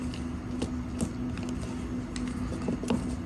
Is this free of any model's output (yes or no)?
yes